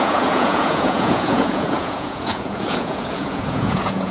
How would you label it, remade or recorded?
remade